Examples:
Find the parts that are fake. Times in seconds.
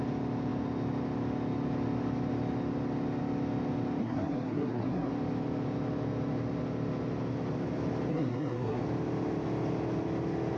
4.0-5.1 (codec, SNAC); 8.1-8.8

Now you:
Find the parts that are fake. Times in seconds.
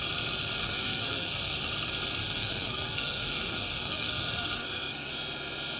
0.6-1.6 (codec, SNAC); 2.2-5.1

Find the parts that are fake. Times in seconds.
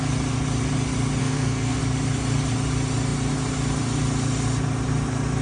1.2-1.8 (codec, SNAC)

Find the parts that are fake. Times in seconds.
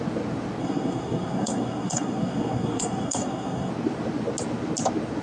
0.6-3.7 (codec, SNAC)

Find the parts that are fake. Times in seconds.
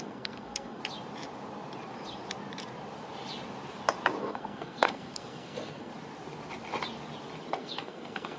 0.0-0.8 (codec, SNAC); 4.2-5.9; 7.5-8.4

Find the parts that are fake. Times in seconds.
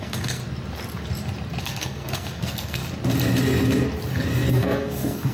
0.0-0.4 (codec, SNAC); 1.6-2.8; 4.5-5.3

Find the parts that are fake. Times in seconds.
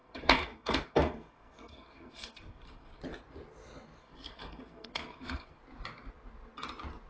0.0-3.0 (codec, SNAC); 4.0-5.6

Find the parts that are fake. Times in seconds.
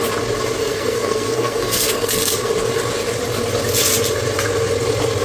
0.6-2.5 (codec, SNAC)